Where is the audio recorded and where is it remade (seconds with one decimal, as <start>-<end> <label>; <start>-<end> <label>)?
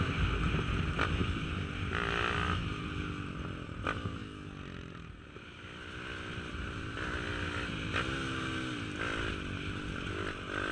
0.0-10.7 recorded